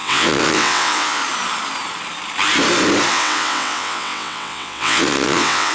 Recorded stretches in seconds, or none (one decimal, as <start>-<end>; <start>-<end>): 1.2-3.1